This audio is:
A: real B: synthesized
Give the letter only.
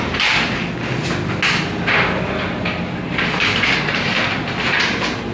A